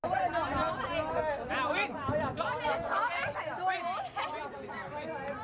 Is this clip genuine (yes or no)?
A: yes